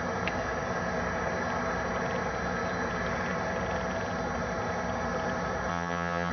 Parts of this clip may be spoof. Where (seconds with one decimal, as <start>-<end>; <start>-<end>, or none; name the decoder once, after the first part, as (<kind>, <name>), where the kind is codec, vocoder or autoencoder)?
5.7-6.3 (vocoder, HiFi-GAN)